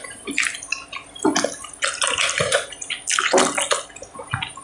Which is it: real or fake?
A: real